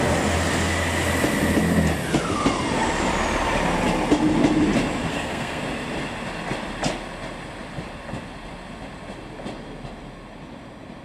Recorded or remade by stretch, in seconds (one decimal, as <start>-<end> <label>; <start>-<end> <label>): 0.0-5.1 recorded; 5.1-5.6 remade; 5.6-11.0 recorded